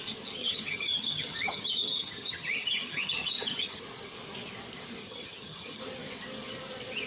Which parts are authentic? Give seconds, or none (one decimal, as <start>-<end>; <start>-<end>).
0.0-0.4; 3.8-5.0; 5.8-7.1